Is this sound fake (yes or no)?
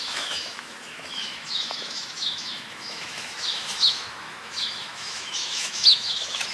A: yes